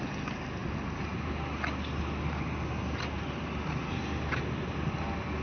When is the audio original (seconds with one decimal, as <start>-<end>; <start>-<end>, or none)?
0.0-5.4